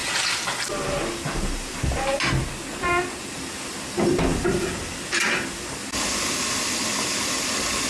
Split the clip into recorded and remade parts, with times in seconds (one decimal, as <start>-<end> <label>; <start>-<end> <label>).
0.0-7.9 recorded